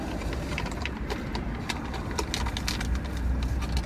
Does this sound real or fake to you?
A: real